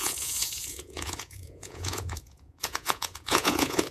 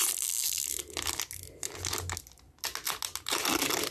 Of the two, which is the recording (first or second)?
second